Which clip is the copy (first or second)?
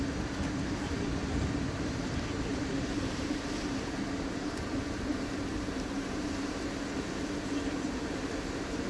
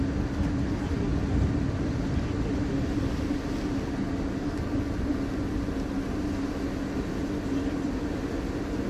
first